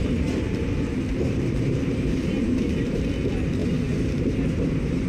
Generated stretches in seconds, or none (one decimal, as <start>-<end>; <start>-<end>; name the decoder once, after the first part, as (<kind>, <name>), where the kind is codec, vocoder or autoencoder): 0.0-3.1 (vocoder, BigVGAN v2)